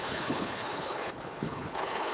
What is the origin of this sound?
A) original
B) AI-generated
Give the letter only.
B